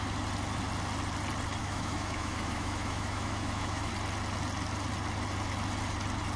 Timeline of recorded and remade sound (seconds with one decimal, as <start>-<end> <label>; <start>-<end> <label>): 0.0-1.6 recorded; 1.6-3.9 remade; 3.9-6.4 recorded